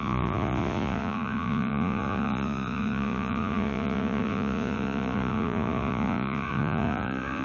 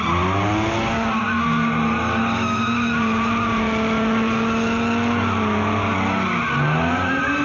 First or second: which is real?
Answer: second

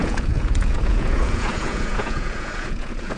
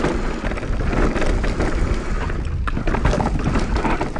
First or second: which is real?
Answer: second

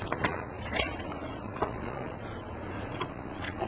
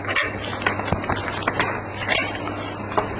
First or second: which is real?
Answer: second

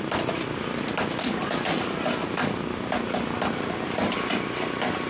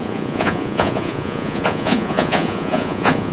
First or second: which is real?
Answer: first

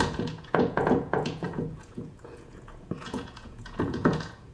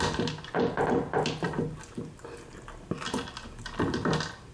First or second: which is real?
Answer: second